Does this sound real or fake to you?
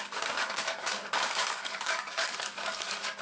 fake